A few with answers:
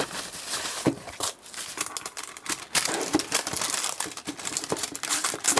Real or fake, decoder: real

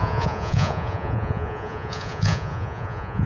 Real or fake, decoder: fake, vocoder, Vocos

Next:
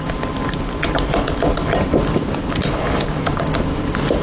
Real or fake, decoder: real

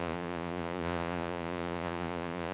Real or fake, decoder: fake, vocoder, Vocos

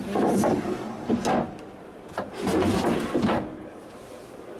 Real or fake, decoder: real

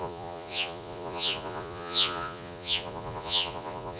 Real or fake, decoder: fake, vocoder, Vocos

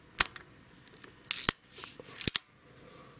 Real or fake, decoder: real